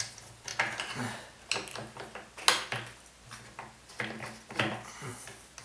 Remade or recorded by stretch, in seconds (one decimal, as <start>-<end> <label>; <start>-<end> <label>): 0.0-0.5 remade; 0.5-3.9 recorded; 3.9-5.1 remade; 5.1-5.6 recorded